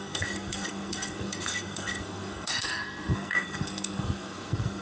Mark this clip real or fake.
fake